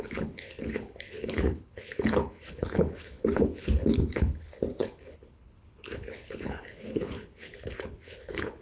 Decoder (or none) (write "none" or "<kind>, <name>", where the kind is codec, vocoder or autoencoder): codec, HILCodec